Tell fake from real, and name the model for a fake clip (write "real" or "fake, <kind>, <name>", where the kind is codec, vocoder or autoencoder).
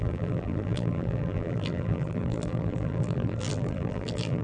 fake, vocoder, BigVGAN v2